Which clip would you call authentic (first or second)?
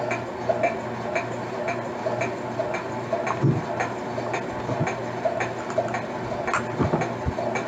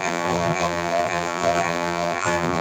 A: first